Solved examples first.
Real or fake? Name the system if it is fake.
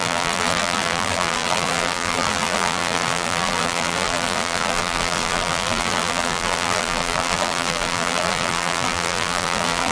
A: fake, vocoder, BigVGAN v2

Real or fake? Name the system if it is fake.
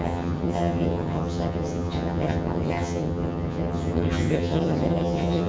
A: fake, vocoder, HiFi-GAN